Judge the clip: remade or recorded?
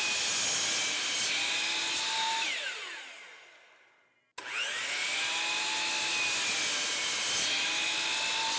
recorded